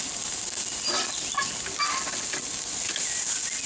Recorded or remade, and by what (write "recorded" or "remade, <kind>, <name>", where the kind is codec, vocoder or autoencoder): recorded